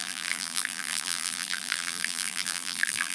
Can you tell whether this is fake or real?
fake